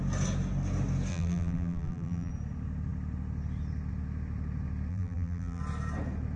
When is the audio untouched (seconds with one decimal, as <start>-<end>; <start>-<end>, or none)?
0.0-1.1; 2.3-4.9; 5.6-6.4